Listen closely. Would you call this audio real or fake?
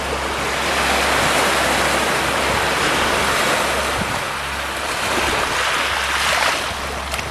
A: real